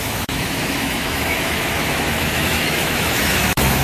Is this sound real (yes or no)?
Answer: no